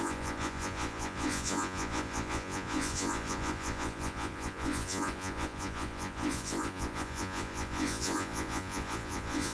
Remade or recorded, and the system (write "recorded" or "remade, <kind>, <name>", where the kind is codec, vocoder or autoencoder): remade, vocoder, Vocos